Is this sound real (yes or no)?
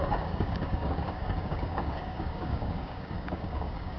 no